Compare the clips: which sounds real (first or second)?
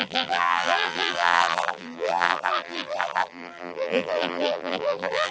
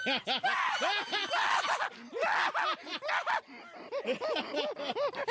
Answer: second